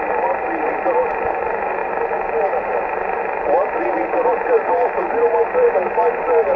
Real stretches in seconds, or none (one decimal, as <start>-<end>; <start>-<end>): 0.0-6.6